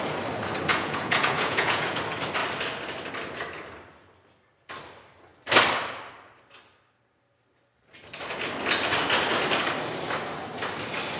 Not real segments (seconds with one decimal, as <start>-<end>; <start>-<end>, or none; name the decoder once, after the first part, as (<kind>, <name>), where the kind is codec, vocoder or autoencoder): 0.7-2.0 (vocoder, Vocos)